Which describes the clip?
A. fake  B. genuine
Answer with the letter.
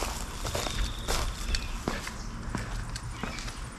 B